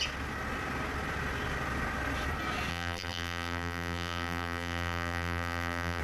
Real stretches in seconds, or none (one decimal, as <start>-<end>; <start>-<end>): 0.0-2.7